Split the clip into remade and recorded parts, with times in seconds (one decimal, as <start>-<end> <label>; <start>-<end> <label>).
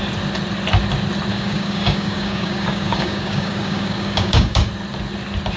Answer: 0.0-1.3 recorded; 1.3-4.7 remade; 4.7-5.6 recorded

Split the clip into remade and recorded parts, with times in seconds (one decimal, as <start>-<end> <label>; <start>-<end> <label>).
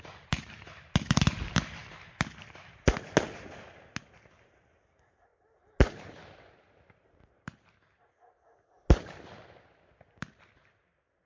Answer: 0.0-11.3 recorded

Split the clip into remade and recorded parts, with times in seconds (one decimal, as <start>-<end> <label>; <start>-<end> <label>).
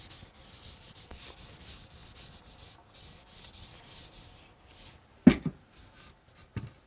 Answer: 0.0-6.9 recorded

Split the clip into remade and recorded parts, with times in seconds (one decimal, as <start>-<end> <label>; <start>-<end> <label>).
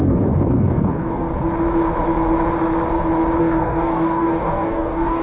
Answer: 0.0-1.3 remade; 1.3-3.4 recorded; 3.4-5.2 remade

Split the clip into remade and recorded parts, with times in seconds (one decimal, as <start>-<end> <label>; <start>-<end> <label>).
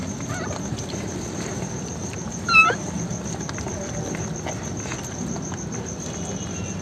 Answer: 0.0-6.8 recorded